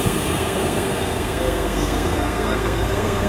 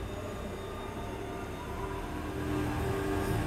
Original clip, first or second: second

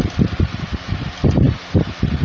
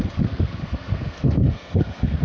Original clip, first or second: first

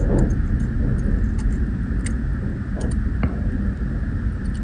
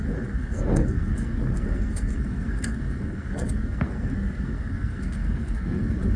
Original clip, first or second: first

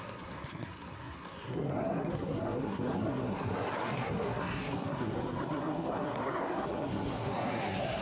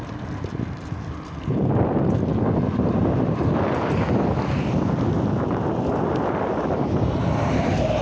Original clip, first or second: second